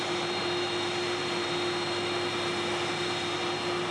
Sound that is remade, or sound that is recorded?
recorded